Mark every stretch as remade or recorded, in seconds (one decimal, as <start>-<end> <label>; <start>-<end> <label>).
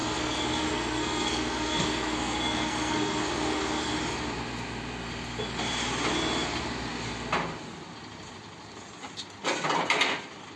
0.0-3.9 remade; 3.9-10.6 recorded